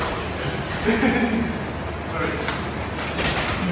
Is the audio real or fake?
real